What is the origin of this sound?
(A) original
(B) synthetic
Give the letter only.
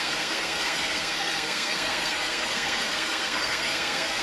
B